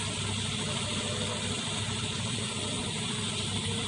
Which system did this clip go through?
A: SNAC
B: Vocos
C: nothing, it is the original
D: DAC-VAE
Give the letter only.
C